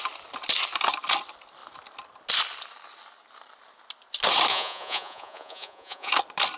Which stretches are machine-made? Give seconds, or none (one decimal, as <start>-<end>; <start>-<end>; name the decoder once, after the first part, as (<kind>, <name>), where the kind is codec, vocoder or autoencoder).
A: 4.5-6.1 (vocoder, Vocos)